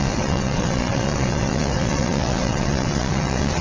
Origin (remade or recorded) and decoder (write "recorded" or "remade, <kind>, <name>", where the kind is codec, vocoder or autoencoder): remade, vocoder, WaveNeXt